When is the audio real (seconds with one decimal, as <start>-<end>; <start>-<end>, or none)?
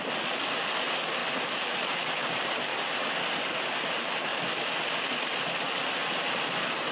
0.0-1.2; 1.8-4.3; 5.7-6.9